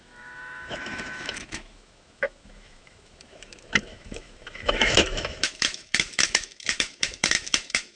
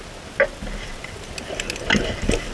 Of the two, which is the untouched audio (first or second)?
second